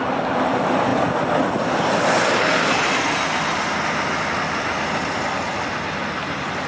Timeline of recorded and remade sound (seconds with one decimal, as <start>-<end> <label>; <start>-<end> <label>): 0.0-6.7 recorded